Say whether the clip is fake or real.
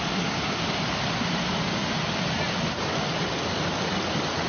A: real